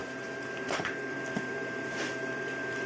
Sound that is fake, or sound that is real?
fake